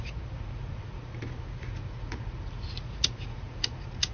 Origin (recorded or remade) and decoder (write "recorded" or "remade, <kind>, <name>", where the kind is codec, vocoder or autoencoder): remade, vocoder, Vocos